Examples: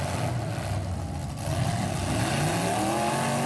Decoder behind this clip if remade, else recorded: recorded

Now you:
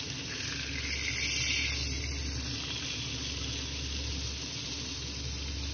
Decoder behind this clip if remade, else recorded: recorded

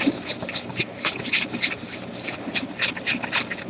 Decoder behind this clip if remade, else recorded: recorded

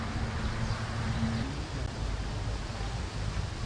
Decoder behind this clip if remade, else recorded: recorded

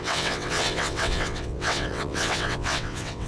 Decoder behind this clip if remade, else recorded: remade, vocoder, WaveNeXt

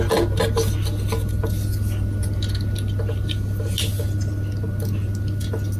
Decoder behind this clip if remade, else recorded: recorded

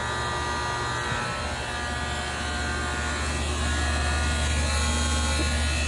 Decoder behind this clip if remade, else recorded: recorded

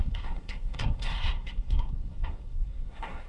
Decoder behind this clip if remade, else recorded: remade, codec, SNAC